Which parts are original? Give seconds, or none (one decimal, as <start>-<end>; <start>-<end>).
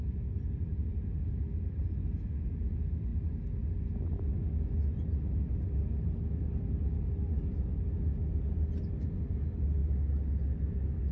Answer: 0.0-11.1